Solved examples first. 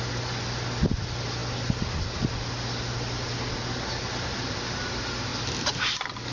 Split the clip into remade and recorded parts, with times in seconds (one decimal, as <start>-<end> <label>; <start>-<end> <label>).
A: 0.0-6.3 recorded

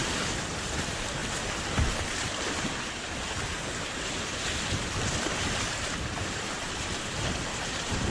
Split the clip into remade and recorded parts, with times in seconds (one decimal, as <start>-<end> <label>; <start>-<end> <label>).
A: 0.0-1.2 remade; 1.2-6.1 recorded; 6.1-8.1 remade

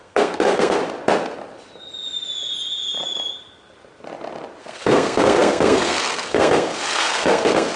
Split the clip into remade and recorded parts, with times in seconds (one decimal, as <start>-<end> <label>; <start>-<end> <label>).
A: 0.0-0.8 remade; 0.8-4.6 recorded; 4.6-7.8 remade

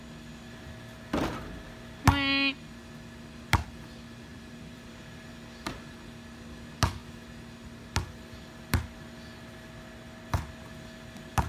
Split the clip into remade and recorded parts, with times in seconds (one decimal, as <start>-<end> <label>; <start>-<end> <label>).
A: 0.0-4.3 recorded; 4.3-5.3 remade; 5.3-11.5 recorded

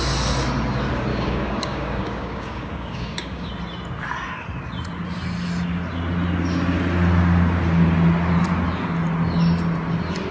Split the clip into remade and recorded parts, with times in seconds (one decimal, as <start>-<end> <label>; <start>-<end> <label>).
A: 0.0-1.1 recorded; 1.1-3.5 remade; 3.5-10.3 recorded